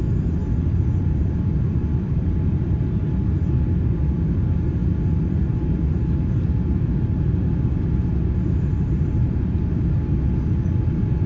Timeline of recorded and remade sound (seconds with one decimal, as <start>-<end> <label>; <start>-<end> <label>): 0.0-0.4 recorded; 0.4-2.6 remade; 2.6-11.3 recorded